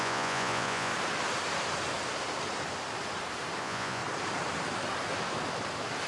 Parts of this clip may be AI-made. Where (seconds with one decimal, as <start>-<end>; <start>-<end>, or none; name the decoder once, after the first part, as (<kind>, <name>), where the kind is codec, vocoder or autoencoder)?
0.0-0.9 (vocoder, Vocos); 3.6-4.0